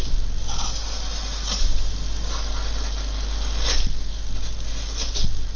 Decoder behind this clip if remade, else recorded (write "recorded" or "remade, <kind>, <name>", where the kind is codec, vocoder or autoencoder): recorded